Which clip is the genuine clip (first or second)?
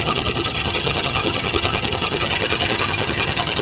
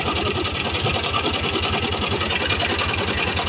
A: second